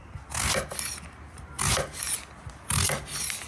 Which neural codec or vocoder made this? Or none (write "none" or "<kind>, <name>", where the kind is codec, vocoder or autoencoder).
none